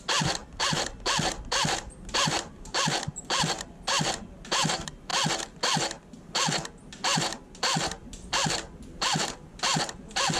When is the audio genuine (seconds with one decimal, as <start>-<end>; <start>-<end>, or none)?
0.4-2.1; 5.1-9.8